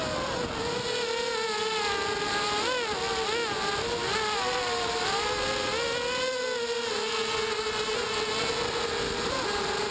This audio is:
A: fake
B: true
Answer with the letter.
B